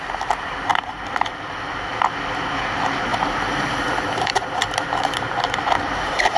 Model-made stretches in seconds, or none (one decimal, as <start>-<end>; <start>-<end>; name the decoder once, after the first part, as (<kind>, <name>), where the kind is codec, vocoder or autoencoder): 0.7-1.8 (vocoder, BigVGAN v2); 3.1-6.4